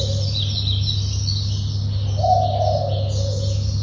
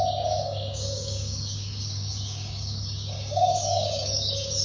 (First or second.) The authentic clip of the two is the first